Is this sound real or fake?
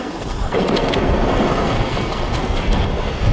fake